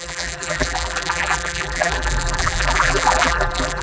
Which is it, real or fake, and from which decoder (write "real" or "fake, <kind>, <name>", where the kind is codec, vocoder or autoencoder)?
fake, vocoder, BigVGAN v2